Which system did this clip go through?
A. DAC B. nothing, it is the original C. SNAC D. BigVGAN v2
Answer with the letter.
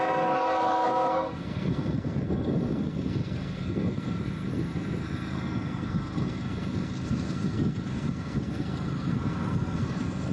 C